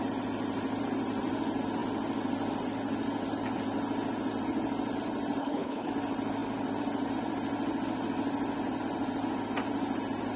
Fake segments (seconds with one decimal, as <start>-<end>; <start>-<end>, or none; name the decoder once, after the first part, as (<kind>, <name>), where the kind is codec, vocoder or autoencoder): 5.4-5.9 (codec, HILCodec)